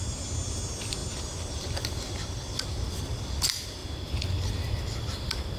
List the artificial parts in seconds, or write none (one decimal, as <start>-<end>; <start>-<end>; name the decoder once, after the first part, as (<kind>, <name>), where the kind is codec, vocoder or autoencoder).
none